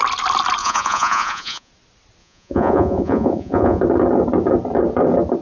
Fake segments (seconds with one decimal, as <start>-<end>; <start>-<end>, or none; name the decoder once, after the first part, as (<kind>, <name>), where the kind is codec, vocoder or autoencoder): 0.6-1.7 (vocoder, Vocos); 2.2-3.8